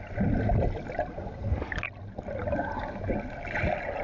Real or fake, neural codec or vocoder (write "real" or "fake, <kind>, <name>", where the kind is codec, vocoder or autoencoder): real